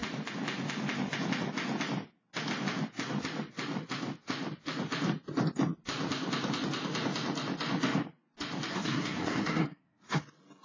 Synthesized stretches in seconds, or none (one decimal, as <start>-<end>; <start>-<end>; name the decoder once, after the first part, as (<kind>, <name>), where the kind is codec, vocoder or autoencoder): 8.7-10.2 (codec, SNAC)